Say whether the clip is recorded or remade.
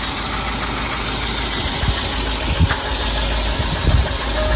recorded